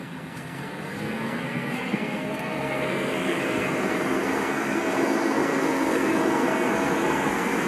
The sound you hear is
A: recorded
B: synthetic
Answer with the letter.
B